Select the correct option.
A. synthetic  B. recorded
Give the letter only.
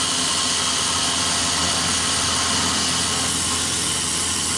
B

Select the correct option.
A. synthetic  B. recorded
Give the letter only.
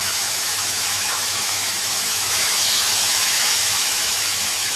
A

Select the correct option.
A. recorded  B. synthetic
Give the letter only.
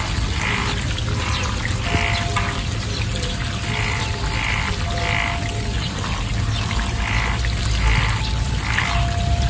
A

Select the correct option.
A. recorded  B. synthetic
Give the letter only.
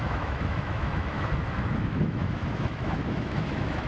B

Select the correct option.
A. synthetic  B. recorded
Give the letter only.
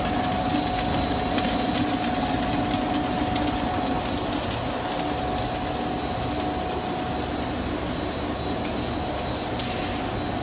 B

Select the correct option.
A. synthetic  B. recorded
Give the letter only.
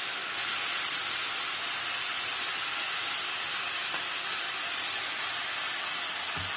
B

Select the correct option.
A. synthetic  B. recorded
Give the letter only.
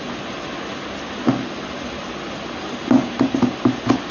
B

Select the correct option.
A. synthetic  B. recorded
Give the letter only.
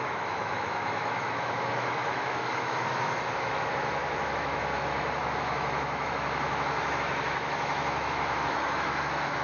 A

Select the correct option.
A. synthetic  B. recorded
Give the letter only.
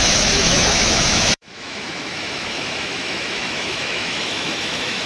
A